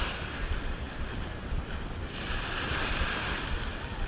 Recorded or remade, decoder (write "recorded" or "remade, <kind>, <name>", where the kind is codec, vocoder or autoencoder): recorded